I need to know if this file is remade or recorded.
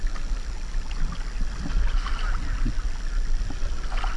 recorded